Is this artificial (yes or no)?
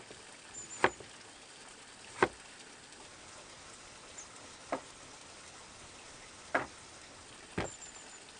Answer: no